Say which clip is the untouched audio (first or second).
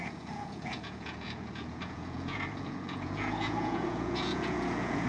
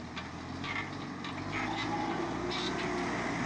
second